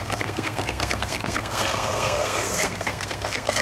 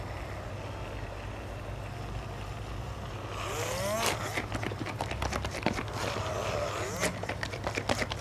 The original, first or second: second